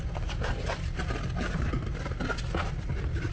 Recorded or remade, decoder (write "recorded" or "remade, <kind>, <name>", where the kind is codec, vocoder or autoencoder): remade, vocoder, BigVGAN v2